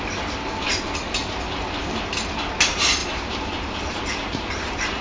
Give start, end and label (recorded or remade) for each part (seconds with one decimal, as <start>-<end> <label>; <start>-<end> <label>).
0.0-3.0 recorded; 3.0-5.0 remade